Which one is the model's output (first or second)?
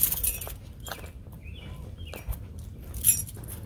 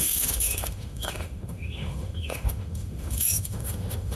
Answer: second